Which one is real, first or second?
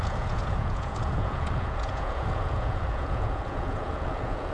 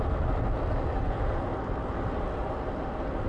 second